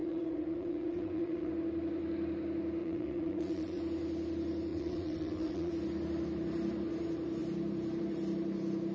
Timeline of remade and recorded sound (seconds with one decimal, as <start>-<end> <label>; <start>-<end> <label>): 0.0-1.5 remade; 1.5-2.8 recorded; 2.8-3.8 remade; 3.8-4.7 recorded; 4.7-5.7 remade; 5.7-8.9 recorded